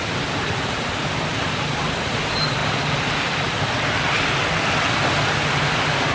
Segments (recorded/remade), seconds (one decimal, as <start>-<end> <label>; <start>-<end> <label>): 0.0-6.1 recorded

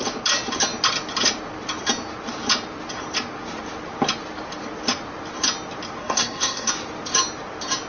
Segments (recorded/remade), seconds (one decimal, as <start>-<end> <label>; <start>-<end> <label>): 0.0-6.0 recorded; 6.0-6.7 remade; 6.7-7.9 recorded

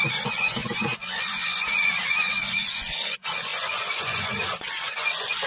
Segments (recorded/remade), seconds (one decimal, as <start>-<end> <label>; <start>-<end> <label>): 0.0-5.5 remade

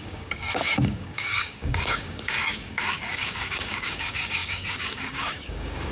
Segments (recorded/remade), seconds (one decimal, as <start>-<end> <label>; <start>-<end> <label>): 0.0-5.9 remade

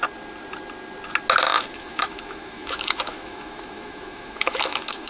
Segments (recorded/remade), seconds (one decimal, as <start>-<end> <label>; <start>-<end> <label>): 0.0-1.4 recorded; 1.4-5.1 remade

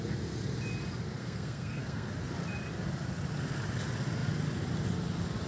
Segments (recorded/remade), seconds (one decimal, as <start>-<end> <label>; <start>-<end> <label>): 0.0-1.2 recorded; 1.2-2.1 remade; 2.1-5.5 recorded

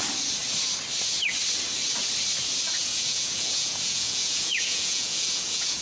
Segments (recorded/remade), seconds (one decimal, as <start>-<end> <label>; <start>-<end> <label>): 0.0-2.8 recorded; 2.8-5.8 remade

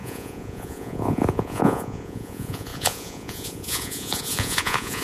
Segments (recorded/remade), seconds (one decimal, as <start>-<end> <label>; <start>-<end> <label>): 0.0-5.0 remade